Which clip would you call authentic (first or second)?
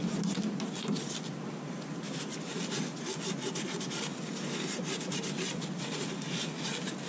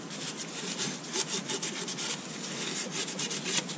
first